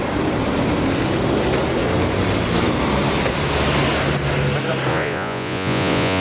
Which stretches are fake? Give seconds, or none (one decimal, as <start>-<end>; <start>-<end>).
4.9-6.2